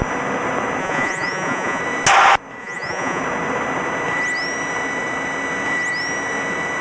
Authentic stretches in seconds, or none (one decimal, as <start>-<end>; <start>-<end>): 0.0-0.8; 1.8-2.6; 3.2-6.8